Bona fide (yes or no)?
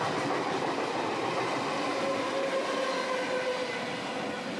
yes